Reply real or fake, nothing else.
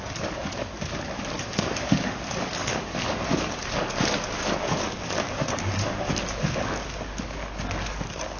fake